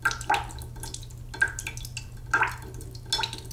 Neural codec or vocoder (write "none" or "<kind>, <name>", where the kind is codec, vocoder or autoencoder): none